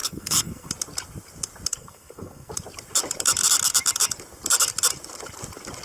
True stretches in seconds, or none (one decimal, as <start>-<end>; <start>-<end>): 0.7-1.7; 2.5-5.8